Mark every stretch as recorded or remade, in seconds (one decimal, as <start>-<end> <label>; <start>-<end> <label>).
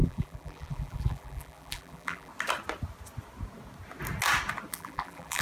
0.0-2.3 remade; 2.3-4.7 recorded; 4.7-5.4 remade